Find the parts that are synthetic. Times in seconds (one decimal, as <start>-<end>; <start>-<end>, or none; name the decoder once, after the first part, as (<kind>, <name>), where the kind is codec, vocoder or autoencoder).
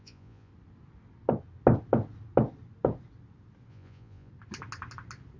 0.0-0.5 (vocoder, Vocos); 3.7-4.3